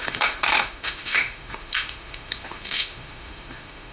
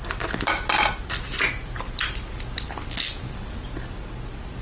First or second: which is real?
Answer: second